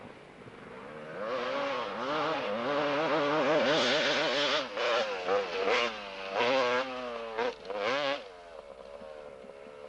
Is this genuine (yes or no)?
yes